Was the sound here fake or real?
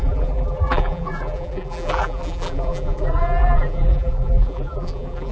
fake